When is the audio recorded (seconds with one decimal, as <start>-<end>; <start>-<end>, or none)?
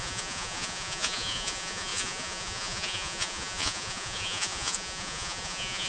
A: none